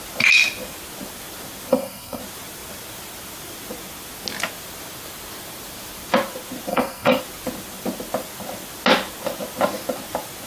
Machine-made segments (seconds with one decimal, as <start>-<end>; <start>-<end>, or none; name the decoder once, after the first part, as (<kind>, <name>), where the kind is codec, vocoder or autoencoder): 1.7-2.2 (codec, SNAC); 6.7-7.2

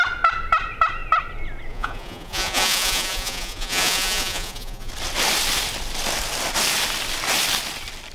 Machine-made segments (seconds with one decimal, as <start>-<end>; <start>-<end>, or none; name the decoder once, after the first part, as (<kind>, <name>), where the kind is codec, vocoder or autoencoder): 1.7-4.9 (vocoder, Vocos)

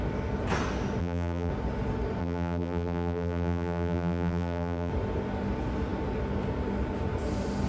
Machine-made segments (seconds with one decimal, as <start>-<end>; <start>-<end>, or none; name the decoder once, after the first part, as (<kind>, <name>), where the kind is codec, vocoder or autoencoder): 1.0-1.5 (vocoder, BigVGAN v2); 2.2-4.9